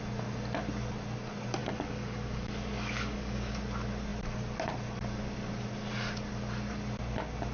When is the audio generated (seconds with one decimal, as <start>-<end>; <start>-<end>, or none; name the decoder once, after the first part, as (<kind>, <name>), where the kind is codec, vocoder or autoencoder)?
1.6-3.5 (codec, DAC)